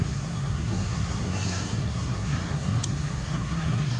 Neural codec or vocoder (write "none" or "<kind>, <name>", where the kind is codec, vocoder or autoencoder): codec, SNAC